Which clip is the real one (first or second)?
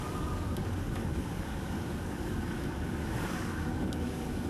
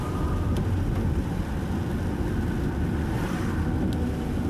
second